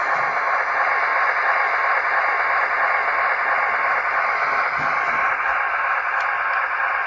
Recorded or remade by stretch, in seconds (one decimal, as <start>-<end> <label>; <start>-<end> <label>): 0.0-7.1 recorded